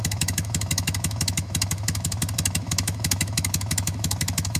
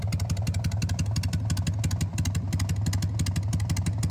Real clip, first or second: second